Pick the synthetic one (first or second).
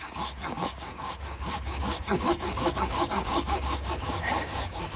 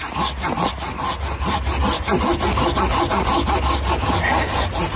first